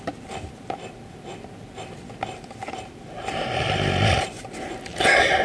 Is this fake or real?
real